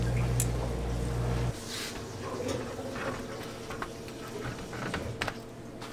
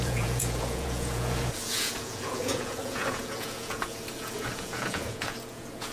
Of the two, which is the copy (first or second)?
second